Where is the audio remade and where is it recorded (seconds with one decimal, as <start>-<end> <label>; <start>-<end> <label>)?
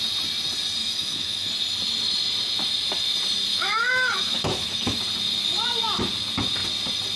0.0-0.8 recorded; 0.8-1.5 remade; 1.5-3.5 recorded; 3.5-5.0 remade; 5.0-7.2 recorded